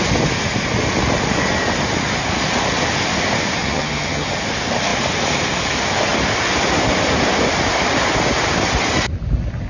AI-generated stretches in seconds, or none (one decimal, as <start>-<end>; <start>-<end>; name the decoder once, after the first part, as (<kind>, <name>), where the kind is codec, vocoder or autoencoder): 3.6-4.3 (vocoder, HiFi-GAN)